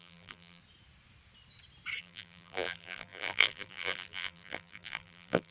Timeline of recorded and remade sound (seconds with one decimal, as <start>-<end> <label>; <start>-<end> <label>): 0.0-0.6 remade; 0.6-2.0 recorded; 2.0-5.5 remade